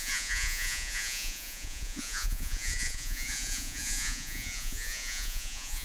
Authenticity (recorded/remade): remade